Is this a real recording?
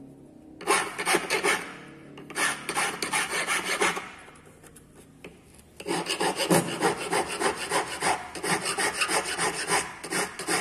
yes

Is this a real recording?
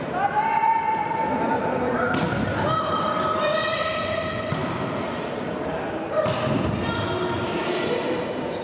no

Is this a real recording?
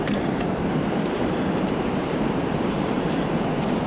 no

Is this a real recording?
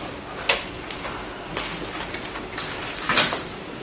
yes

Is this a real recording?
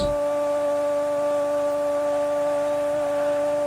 yes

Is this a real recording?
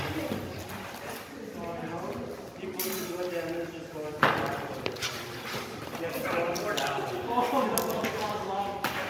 yes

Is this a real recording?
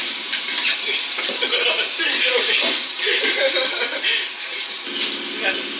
yes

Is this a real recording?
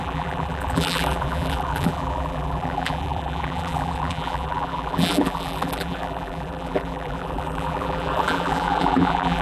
no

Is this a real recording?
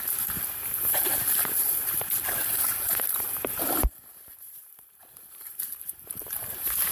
no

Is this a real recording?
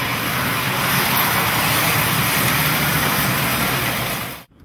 yes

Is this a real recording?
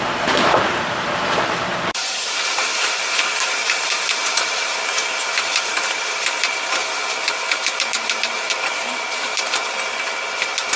no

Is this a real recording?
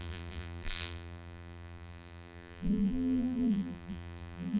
no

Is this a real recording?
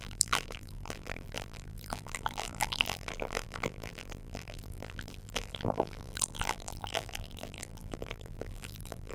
no